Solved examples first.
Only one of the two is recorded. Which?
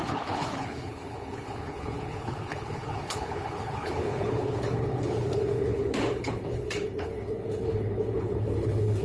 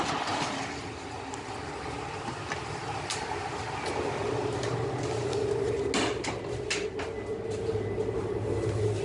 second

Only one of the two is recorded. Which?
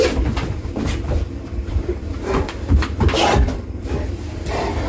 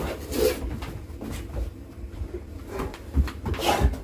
second